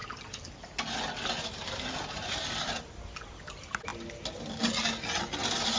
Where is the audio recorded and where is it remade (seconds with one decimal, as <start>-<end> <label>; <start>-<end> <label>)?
0.0-5.8 recorded